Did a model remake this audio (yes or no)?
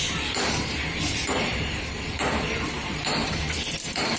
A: yes